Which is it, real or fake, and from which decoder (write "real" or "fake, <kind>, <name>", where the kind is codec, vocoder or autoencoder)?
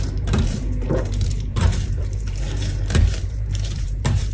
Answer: fake, vocoder, BigVGAN v2